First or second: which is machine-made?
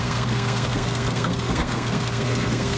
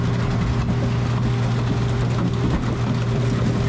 first